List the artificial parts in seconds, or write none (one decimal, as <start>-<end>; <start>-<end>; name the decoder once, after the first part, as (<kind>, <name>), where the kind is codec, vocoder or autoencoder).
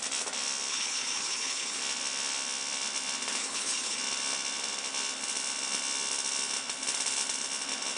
0.7-1.8 (codec, HILCodec); 3.4-4.0